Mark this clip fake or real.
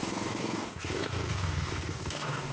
fake